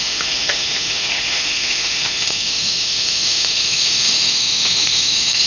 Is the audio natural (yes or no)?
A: no